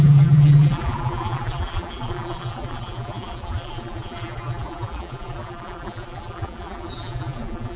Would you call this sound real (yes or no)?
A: no